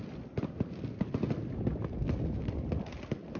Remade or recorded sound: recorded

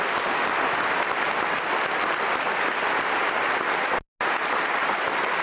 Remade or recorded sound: recorded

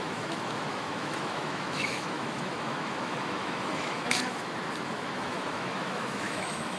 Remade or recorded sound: remade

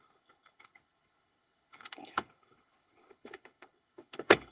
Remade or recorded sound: remade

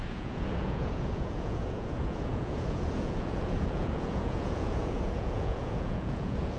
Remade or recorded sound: remade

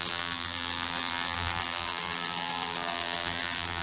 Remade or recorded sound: remade